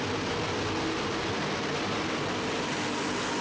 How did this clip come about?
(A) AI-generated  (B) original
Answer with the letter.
B